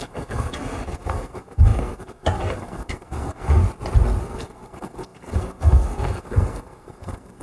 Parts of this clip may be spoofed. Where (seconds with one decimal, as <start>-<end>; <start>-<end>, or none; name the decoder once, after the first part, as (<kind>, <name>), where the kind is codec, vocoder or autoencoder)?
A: 0.0-3.6 (codec, SNAC); 4.2-7.4